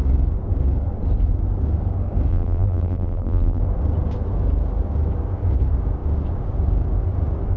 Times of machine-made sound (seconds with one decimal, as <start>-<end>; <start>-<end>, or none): 2.3-3.6